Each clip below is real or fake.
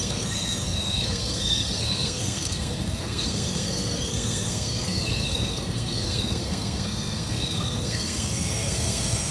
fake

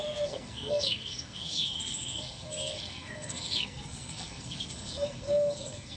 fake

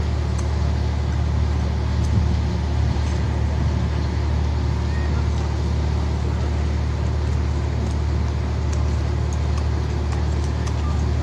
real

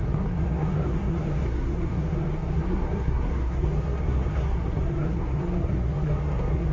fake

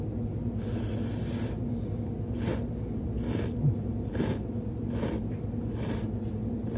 real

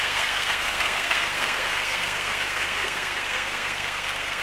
fake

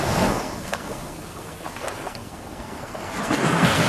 fake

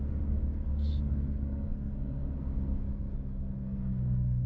fake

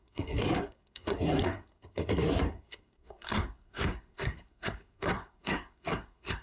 fake